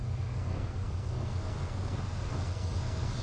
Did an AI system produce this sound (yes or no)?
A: yes